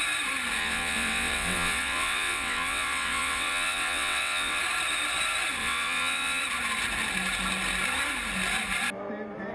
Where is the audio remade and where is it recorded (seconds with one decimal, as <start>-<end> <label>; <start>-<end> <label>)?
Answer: 0.0-0.6 recorded; 0.6-4.6 remade; 4.6-5.6 recorded; 5.6-6.4 remade; 6.4-9.5 recorded